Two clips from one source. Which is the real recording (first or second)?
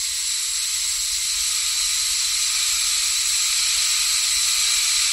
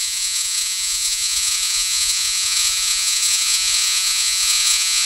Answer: first